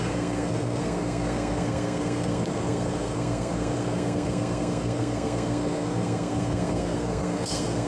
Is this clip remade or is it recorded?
remade